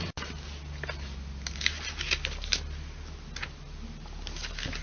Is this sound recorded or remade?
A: recorded